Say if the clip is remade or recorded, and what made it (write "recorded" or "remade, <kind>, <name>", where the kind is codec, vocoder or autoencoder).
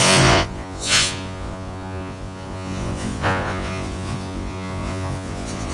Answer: remade, vocoder, Vocos